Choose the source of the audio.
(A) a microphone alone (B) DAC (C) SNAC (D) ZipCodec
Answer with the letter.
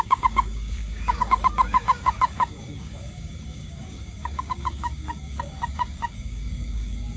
B